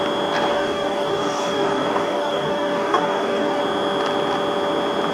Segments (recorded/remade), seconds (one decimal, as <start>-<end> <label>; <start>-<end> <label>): 0.0-0.5 recorded; 0.5-3.6 remade; 3.6-5.1 recorded